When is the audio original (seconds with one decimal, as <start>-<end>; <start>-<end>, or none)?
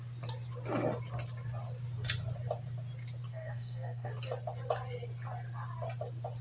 0.0-3.3; 4.1-6.4